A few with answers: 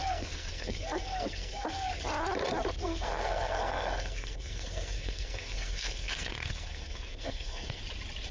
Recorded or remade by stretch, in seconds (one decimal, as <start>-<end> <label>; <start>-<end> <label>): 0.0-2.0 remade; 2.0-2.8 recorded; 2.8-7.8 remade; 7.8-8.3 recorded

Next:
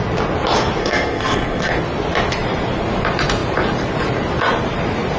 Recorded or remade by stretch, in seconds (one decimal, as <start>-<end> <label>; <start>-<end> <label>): 0.0-0.8 recorded; 0.8-1.7 remade; 1.7-5.2 recorded

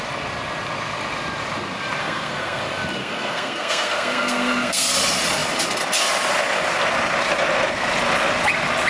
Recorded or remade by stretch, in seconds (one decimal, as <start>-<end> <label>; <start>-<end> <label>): 0.0-2.0 recorded; 2.0-2.6 remade; 2.6-3.0 recorded; 3.0-4.9 remade; 4.9-8.9 recorded

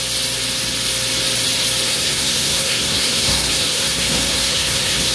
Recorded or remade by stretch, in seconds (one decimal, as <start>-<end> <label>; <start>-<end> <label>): 0.0-1.9 recorded; 1.9-5.1 remade